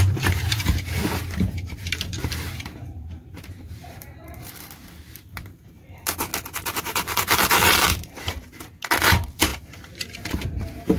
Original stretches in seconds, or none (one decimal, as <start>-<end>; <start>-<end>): 6.3-6.8